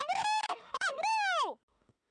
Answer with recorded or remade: remade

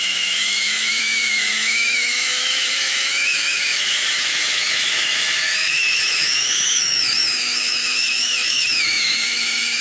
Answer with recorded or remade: remade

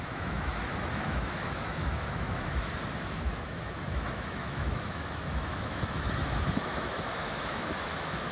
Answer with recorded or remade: remade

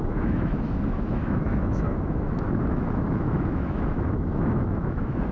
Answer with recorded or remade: remade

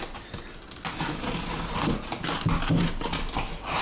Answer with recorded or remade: recorded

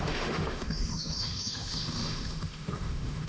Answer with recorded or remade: remade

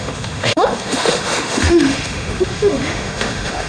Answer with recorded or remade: remade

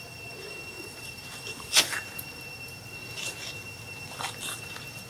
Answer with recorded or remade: recorded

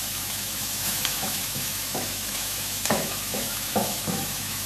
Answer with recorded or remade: remade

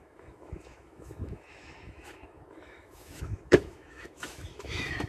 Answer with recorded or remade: remade